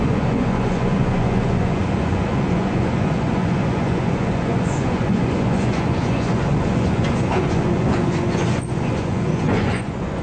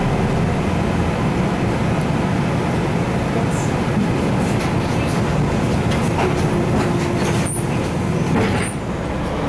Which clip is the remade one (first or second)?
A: first